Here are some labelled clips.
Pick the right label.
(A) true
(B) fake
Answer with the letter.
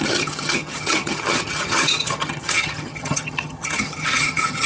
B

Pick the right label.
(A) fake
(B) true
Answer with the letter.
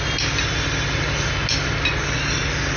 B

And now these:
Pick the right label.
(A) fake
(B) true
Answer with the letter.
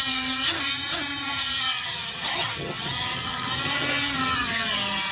A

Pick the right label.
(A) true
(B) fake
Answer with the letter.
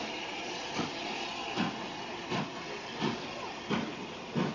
A